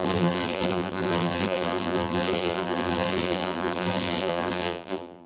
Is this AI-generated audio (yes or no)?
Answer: yes